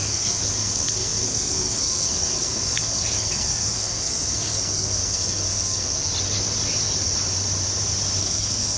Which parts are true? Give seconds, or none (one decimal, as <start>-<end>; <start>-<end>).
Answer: 6.1-8.2